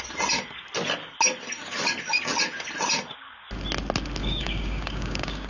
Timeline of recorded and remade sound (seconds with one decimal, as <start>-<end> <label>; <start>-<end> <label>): 0.0-4.2 recorded; 4.2-5.5 remade